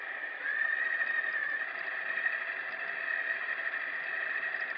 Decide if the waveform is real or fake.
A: fake